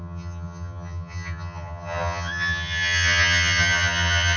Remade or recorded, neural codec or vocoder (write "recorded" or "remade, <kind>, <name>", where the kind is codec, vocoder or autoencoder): remade, vocoder, HiFi-GAN